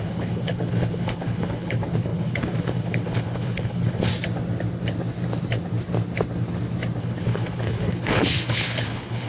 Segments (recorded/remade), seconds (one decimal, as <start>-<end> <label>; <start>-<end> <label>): 0.0-4.1 remade; 4.1-7.0 recorded; 7.0-9.3 remade